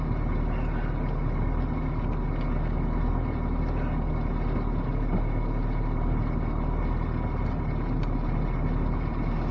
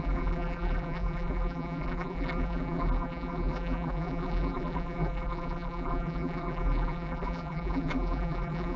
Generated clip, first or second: second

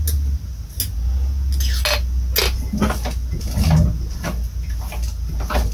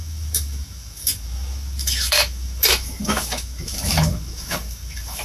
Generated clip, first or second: second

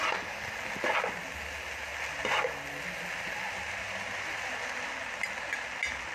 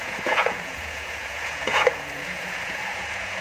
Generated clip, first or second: second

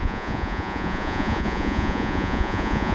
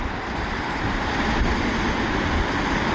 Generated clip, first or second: first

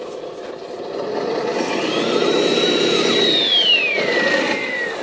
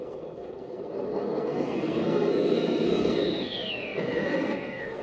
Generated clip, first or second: second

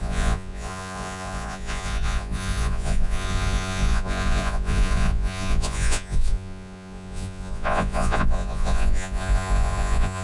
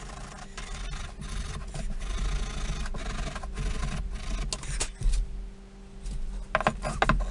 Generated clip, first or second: first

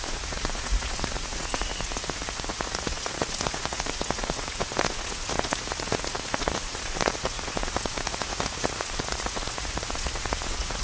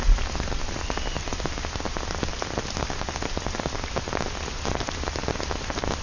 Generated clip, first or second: first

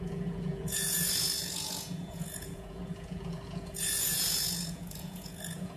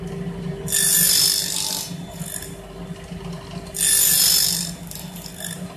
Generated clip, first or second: first